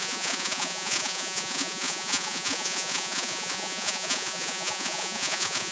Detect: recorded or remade remade